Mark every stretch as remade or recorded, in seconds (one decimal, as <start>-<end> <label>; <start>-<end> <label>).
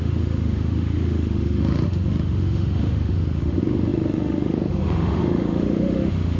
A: 0.0-6.4 remade